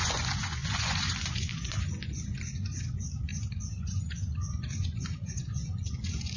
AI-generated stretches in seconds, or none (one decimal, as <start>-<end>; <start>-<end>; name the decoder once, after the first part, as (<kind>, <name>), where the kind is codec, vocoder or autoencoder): 0.0-3.3 (vocoder, Vocos); 3.8-6.4